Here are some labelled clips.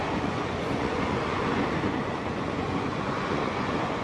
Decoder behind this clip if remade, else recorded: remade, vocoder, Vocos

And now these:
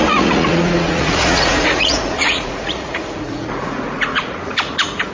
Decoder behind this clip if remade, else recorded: remade, vocoder, Vocos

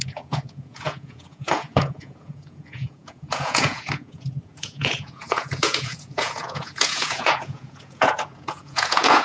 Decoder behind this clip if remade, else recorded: remade, vocoder, Vocos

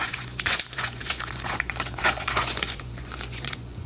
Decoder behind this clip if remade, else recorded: remade, vocoder, Vocos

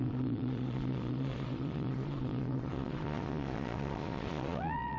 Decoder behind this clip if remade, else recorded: remade, vocoder, Vocos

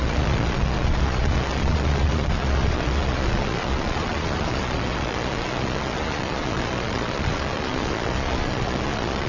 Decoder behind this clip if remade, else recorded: remade, vocoder, Vocos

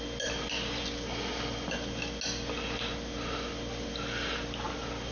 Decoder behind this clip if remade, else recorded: recorded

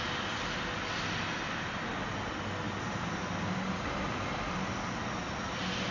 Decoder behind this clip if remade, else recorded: recorded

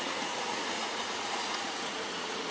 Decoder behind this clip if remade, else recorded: remade, vocoder, Vocos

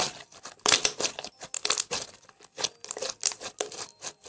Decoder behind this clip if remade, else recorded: recorded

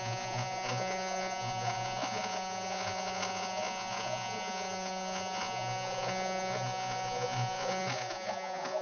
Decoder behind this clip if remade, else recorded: remade, vocoder, Vocos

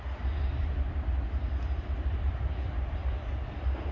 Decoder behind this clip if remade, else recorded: recorded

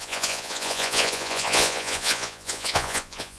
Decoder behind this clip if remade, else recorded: remade, vocoder, Vocos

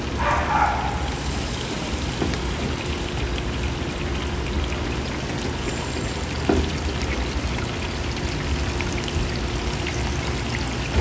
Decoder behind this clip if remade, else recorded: recorded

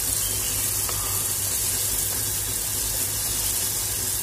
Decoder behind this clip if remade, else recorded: recorded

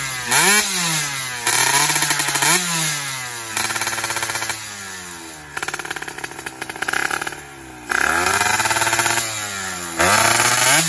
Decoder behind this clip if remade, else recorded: recorded